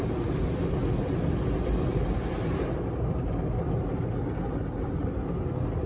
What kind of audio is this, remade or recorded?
recorded